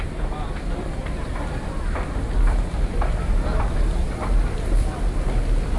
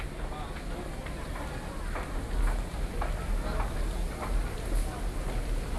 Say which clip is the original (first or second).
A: second